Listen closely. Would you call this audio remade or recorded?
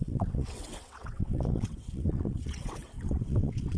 remade